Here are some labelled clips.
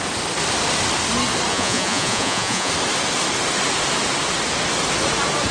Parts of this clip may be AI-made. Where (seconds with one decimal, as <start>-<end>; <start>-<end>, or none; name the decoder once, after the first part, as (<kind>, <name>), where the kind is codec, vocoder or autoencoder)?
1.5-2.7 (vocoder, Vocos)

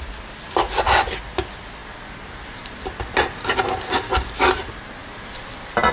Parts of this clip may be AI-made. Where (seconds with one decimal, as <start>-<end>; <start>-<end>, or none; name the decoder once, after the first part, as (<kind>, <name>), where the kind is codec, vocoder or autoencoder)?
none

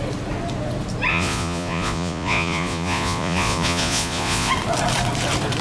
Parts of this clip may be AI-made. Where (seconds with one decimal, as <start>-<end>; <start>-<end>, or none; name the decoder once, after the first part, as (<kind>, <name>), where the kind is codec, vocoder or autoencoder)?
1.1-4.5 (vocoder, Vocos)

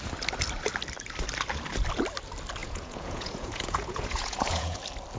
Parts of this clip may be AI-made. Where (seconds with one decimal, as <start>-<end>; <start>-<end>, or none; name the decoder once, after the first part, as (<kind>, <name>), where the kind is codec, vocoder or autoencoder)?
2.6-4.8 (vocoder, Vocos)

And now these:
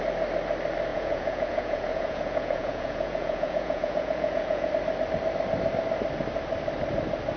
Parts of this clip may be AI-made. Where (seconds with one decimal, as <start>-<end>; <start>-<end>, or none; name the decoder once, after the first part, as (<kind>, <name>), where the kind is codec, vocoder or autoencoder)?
0.9-4.7 (vocoder, Vocos)

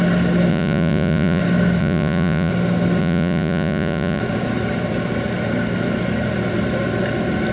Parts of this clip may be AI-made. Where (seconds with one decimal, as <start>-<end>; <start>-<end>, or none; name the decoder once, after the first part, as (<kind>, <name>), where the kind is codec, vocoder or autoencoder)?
0.5-1.4 (vocoder, Vocos); 1.8-2.5; 3.0-4.2

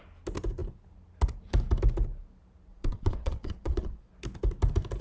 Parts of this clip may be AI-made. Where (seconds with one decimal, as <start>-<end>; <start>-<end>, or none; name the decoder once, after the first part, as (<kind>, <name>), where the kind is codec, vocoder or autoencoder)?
2.7-4.1 (vocoder, Vocos)

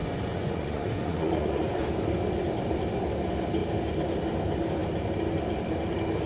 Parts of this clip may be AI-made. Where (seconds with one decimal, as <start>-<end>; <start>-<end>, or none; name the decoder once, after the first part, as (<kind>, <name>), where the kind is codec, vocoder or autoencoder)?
0.0-1.8 (vocoder, Vocos)